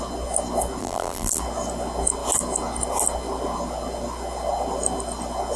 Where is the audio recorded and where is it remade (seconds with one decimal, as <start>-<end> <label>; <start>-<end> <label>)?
0.0-0.8 recorded; 0.8-1.4 remade; 1.4-5.6 recorded